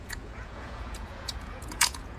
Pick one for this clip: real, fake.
fake